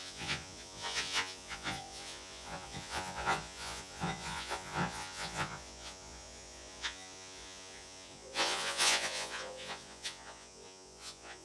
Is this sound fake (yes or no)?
yes